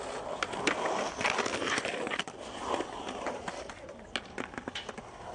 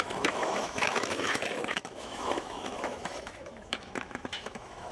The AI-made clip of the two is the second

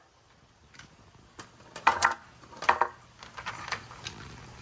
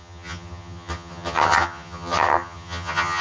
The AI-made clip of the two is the second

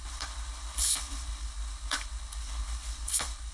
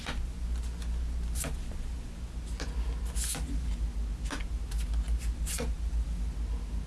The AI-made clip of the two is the first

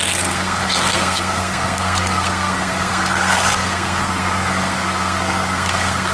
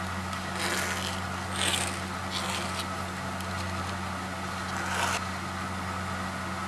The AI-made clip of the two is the first